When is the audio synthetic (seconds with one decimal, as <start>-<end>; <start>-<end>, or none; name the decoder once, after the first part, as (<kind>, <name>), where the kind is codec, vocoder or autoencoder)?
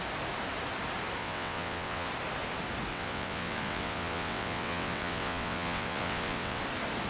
1.2-2.1 (vocoder, WaveNeXt); 2.9-6.6